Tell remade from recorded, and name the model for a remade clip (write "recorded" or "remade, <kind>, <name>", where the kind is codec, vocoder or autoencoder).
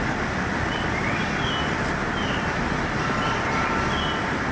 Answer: recorded